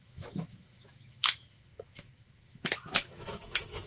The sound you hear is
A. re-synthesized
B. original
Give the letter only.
A